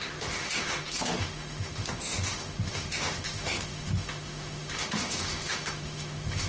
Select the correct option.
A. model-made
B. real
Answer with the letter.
A